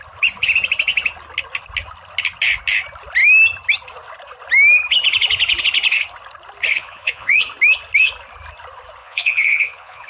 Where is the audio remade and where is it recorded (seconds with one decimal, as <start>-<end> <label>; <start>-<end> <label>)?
0.0-6.8 recorded; 6.8-7.4 remade; 7.4-9.0 recorded; 9.0-10.1 remade